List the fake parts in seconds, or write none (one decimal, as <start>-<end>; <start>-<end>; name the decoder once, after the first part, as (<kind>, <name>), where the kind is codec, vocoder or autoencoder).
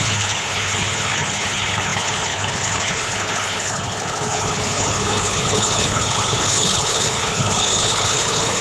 0.0-8.6 (codec, HILCodec)